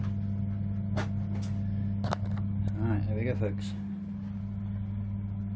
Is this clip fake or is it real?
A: real